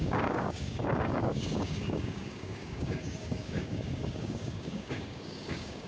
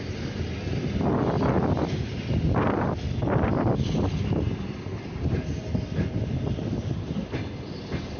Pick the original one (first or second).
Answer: second